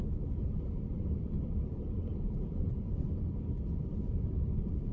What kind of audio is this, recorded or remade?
remade